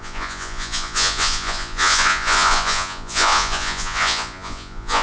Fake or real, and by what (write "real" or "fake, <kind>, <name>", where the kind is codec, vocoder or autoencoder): fake, vocoder, Vocos